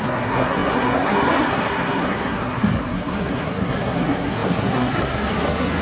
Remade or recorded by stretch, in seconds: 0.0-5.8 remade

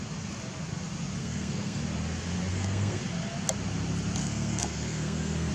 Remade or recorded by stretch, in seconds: 0.0-1.2 recorded; 1.2-1.8 remade; 1.8-2.5 recorded; 2.5-3.0 remade; 3.0-4.2 recorded; 4.2-5.5 remade

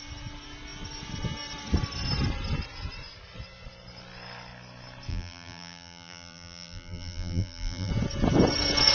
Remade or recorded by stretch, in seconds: 0.0-5.1 recorded; 5.1-7.9 remade; 7.9-8.9 recorded

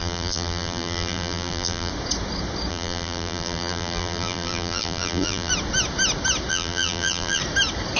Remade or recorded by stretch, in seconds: 0.0-1.9 remade; 1.9-2.7 recorded; 2.7-5.5 remade; 5.5-6.5 recorded; 6.5-7.4 remade; 7.4-8.0 recorded

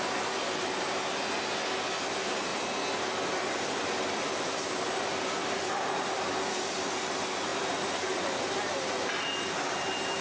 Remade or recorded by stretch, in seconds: 0.0-10.2 recorded

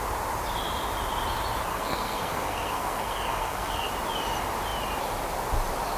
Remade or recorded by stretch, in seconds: 0.0-1.7 recorded; 1.7-3.9 remade; 3.9-6.0 recorded

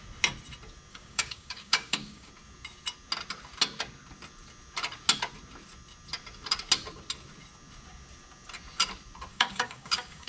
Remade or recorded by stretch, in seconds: 0.0-0.9 recorded; 0.9-2.3 remade; 2.3-9.3 recorded; 9.3-10.3 remade